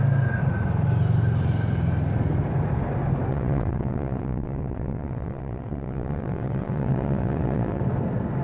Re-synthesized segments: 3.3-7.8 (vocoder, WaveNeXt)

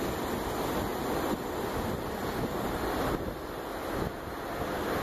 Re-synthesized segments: none

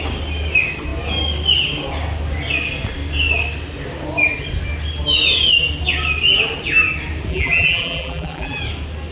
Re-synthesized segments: 7.3-8.6 (vocoder, BigVGAN v2)

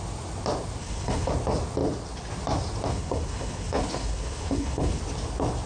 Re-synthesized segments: 0.8-1.3 (codec, HILCodec); 2.9-5.0

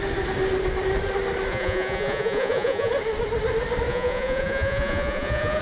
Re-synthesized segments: 1.5-2.9 (vocoder, Vocos); 3.9-5.6

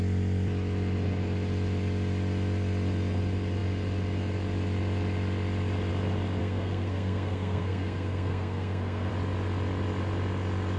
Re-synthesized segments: 6.4-9.1 (codec, SNAC)